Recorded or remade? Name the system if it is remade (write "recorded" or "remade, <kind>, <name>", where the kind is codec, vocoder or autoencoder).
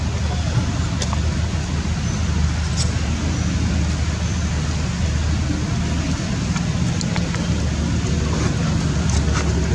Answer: recorded